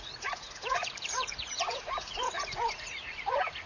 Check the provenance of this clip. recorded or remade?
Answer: remade